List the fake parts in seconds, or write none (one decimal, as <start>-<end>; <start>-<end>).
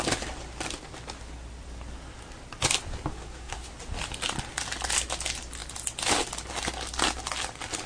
3.1-3.7